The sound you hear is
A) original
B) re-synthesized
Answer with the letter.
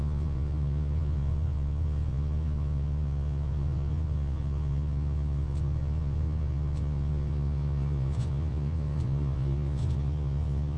B